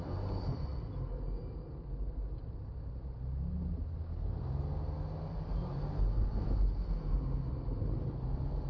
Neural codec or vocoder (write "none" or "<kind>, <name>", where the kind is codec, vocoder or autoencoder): none